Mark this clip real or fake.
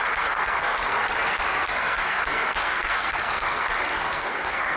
fake